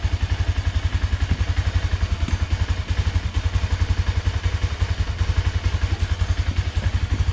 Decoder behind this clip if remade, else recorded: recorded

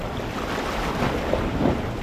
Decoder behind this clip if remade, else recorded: recorded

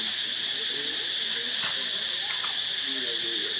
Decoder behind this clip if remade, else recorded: recorded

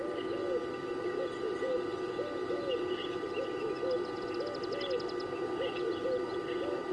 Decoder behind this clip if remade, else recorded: recorded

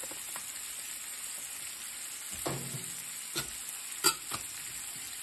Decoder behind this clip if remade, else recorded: recorded